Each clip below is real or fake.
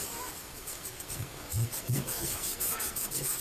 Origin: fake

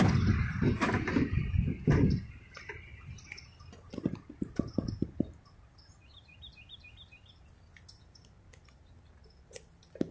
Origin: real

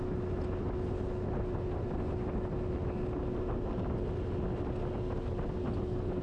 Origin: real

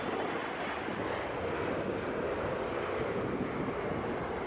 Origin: real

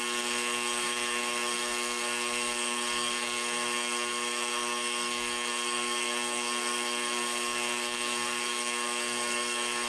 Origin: fake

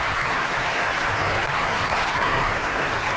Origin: fake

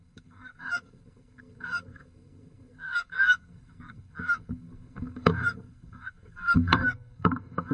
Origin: fake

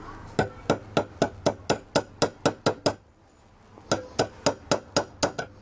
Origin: real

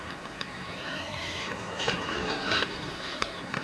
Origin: fake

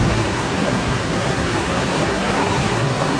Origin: fake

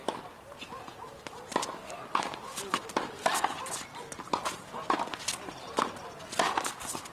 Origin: real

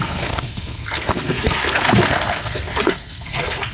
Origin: fake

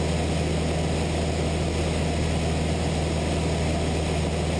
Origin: real